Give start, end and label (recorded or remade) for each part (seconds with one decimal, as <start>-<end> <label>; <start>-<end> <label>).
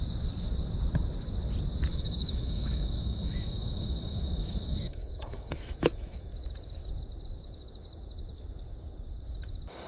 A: 0.0-1.9 recorded; 1.9-6.3 remade; 6.3-9.9 recorded